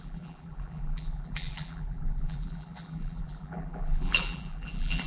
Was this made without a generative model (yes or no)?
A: no